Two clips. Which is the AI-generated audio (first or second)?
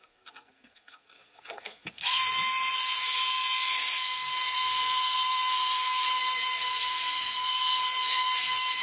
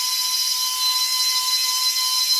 first